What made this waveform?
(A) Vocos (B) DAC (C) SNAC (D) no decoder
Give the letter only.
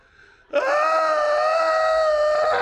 D